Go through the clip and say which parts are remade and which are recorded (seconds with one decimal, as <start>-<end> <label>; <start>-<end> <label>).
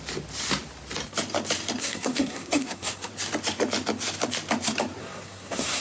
0.0-1.8 recorded; 1.8-3.1 remade; 3.1-5.0 recorded; 5.0-5.8 remade